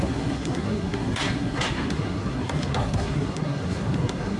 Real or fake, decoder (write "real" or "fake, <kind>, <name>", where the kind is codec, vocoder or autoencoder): fake, codec, SNAC